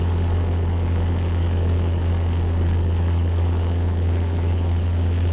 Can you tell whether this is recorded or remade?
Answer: remade